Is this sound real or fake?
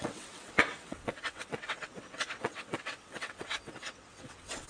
fake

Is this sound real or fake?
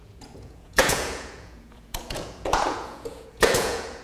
fake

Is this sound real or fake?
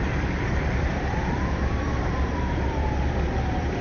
fake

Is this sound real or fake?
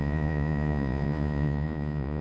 fake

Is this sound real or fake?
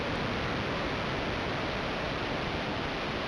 real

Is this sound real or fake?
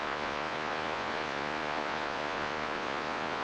fake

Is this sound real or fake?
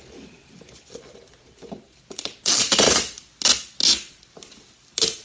real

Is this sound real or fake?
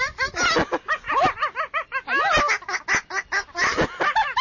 real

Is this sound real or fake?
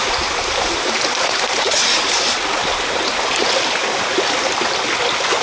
real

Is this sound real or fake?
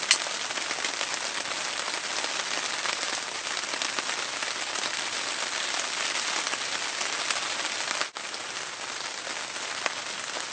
real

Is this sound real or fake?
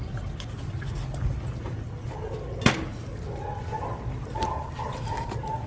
real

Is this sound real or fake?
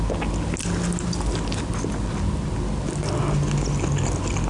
real